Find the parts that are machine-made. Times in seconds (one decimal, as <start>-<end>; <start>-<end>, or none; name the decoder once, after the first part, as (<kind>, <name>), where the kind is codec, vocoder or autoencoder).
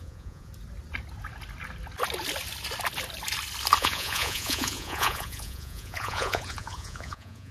0.0-0.5 (vocoder, Vocos); 3.8-7.5